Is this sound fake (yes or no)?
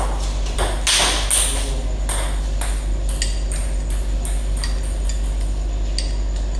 no